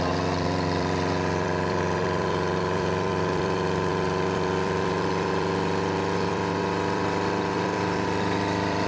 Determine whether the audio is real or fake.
fake